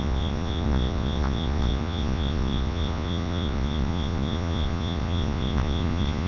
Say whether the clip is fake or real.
fake